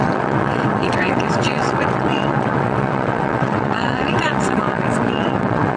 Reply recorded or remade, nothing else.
remade